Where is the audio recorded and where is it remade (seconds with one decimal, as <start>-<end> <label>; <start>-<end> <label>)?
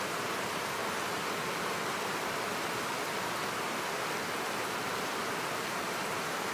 0.0-0.8 remade; 0.8-4.7 recorded; 4.7-6.5 remade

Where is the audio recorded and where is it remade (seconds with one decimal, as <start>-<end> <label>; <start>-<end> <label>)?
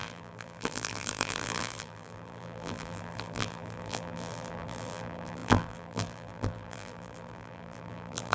0.0-8.3 remade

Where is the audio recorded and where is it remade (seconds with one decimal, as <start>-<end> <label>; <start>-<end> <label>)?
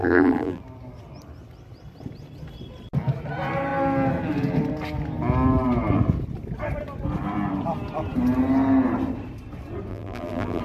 0.0-0.6 remade; 0.6-9.9 recorded; 9.9-10.6 remade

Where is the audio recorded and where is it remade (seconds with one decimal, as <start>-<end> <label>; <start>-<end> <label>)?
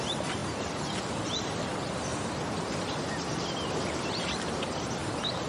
0.0-0.4 remade; 0.4-1.0 recorded; 1.0-2.1 remade; 2.1-4.0 recorded; 4.0-5.0 remade; 5.0-5.5 recorded